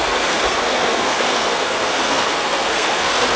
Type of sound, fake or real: fake